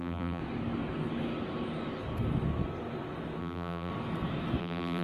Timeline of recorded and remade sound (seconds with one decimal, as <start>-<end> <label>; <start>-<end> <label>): 0.0-0.4 remade; 0.4-3.4 recorded; 3.4-3.9 remade; 3.9-4.6 recorded; 4.6-5.0 remade